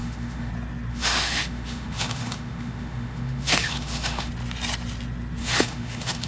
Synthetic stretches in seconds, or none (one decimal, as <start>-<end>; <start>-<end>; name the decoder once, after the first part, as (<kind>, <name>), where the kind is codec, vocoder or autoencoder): 0.0-0.5 (autoencoder, DAC-VAE); 0.9-4.3; 5.4-6.3